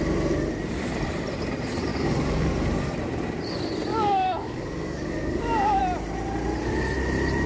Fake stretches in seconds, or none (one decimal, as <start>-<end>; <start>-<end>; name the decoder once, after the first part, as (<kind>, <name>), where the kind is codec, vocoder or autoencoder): 1.9-2.5 (codec, DAC); 3.9-5.8